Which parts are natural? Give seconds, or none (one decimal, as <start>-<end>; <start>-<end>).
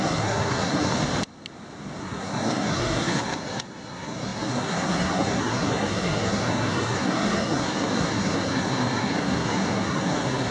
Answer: 0.9-2.0